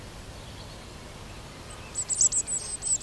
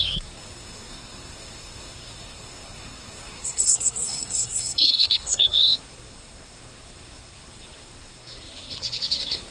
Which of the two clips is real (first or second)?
first